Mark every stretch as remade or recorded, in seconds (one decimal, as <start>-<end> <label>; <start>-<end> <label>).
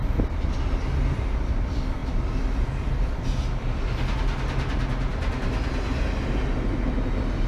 0.0-7.5 recorded